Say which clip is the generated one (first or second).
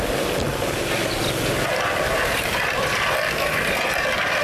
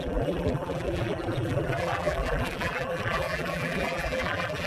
second